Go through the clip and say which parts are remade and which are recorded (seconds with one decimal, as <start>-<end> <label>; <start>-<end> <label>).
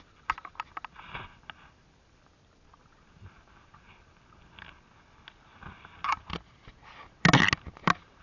0.0-8.2 recorded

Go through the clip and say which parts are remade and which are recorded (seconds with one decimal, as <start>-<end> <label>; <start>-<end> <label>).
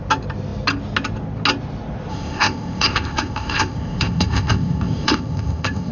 0.0-2.1 recorded; 2.1-5.9 remade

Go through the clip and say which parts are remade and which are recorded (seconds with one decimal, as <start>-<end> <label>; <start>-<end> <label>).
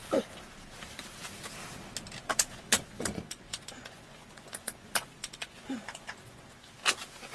0.0-2.3 recorded; 2.3-6.7 remade; 6.7-7.3 recorded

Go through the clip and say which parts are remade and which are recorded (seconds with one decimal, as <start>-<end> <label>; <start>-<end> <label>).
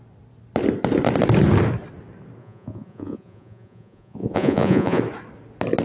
0.0-2.4 recorded; 2.4-5.0 remade; 5.0-5.8 recorded